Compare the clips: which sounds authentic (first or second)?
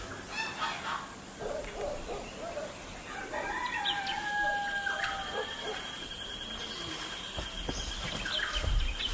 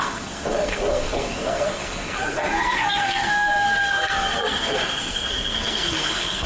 first